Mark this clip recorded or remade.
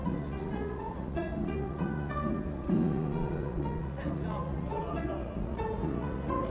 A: remade